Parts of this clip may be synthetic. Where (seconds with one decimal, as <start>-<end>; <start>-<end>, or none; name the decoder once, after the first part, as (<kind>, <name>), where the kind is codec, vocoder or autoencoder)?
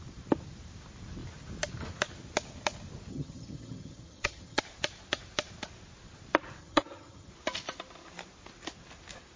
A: 3.1-4.6 (vocoder, HiFi-GAN); 6.6-7.3